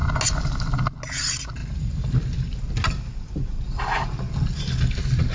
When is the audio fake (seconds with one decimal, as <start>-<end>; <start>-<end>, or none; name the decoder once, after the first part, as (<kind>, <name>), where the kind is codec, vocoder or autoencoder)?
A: none